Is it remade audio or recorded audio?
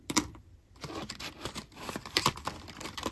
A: remade